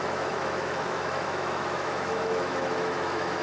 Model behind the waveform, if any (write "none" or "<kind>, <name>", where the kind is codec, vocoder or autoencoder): autoencoder, DAC-VAE